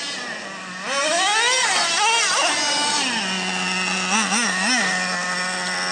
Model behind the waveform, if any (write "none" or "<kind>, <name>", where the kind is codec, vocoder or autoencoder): none